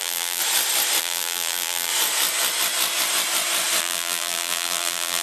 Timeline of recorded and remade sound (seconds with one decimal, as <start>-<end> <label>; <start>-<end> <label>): 0.0-0.4 remade; 0.4-1.0 recorded; 1.0-1.9 remade; 1.9-3.8 recorded; 3.8-5.2 remade